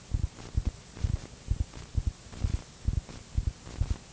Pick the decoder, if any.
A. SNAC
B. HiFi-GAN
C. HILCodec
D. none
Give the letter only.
D